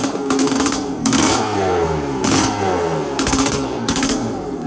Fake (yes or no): yes